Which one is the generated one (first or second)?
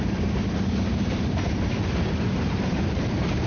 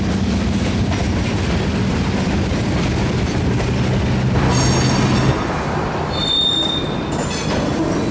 first